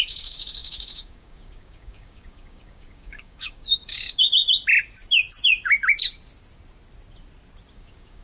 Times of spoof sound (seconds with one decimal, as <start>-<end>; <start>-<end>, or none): 0.0-4.4; 7.7-8.2